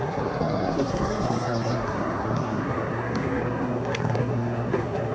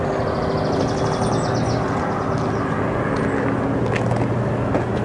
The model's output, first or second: first